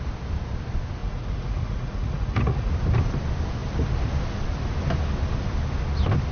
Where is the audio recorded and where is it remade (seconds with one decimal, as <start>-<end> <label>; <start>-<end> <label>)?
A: 0.0-1.0 recorded; 1.0-2.7 remade; 2.7-6.3 recorded